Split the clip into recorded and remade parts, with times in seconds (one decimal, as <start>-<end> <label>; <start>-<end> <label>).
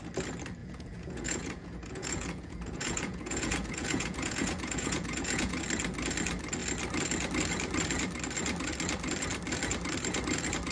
0.0-0.6 recorded; 0.6-5.6 remade; 5.6-10.7 recorded